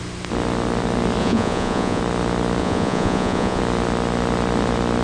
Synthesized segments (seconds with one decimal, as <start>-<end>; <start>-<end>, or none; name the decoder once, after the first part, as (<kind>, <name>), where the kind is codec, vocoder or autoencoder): 1.2-2.0 (vocoder, Vocos); 2.6-3.6